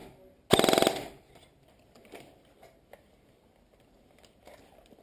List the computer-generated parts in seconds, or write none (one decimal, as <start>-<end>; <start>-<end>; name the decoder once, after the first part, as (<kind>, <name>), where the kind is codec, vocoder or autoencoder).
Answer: none